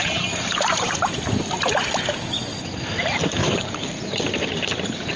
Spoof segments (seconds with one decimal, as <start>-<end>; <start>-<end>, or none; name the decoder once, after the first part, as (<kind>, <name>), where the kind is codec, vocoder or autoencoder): 0.0-1.1 (vocoder, BigVGAN v2); 3.4-4.2

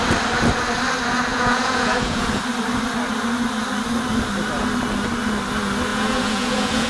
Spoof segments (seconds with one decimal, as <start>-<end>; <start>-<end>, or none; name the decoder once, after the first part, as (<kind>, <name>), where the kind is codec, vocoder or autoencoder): 1.3-2.4 (vocoder, Vocos); 5.9-6.9